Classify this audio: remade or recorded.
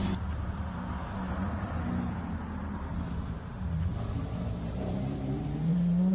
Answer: remade